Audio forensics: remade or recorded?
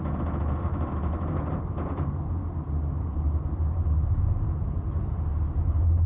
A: recorded